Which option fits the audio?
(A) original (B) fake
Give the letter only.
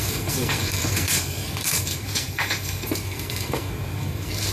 B